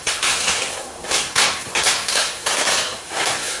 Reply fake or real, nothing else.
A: fake